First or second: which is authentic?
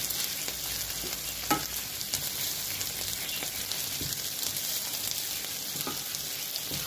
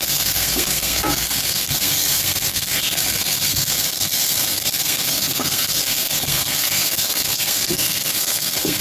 first